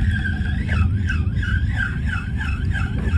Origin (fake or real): fake